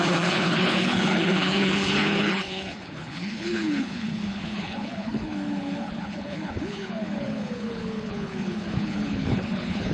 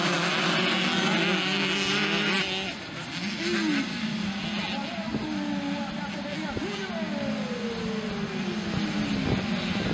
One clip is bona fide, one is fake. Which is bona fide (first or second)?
second